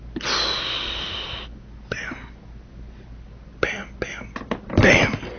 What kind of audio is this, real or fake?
real